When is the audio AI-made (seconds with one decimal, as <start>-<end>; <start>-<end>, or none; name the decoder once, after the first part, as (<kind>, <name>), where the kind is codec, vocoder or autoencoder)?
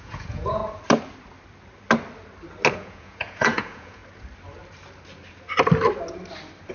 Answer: 0.0-0.6 (vocoder, Vocos); 2.7-4.0